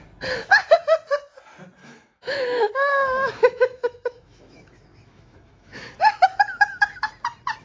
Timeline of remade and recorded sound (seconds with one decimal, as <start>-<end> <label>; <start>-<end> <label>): 0.0-1.8 recorded; 1.8-6.4 remade; 6.4-7.6 recorded